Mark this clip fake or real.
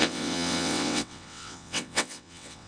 fake